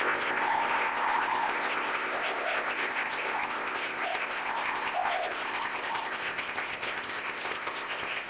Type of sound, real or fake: fake